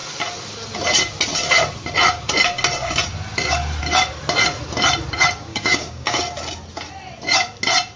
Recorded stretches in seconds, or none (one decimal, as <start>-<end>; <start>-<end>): 0.0-5.5; 6.2-8.0